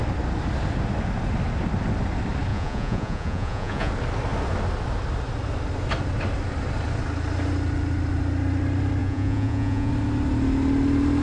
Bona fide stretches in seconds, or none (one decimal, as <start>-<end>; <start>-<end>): 0.0-2.5; 3.9-9.0; 9.9-11.2